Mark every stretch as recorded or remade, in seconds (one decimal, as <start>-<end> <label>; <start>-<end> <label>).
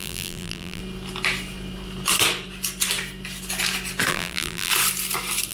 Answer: 0.0-0.8 remade; 0.8-4.1 recorded; 4.1-4.7 remade; 4.7-5.5 recorded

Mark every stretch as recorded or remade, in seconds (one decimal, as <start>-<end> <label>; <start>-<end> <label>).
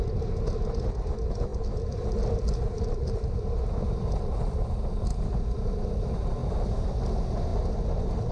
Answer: 0.0-1.5 recorded; 1.5-3.2 remade; 3.2-6.4 recorded; 6.4-6.9 remade; 6.9-8.3 recorded